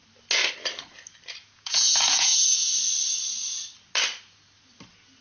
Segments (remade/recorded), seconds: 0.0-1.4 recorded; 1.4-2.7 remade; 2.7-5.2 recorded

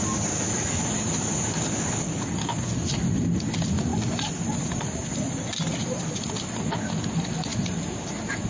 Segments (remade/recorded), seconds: 0.0-7.5 recorded; 7.5-8.1 remade; 8.1-8.5 recorded

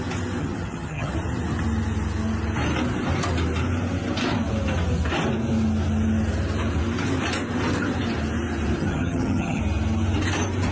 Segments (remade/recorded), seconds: 0.0-0.4 recorded; 0.4-1.1 remade; 1.1-8.8 recorded; 8.8-9.6 remade; 9.6-10.7 recorded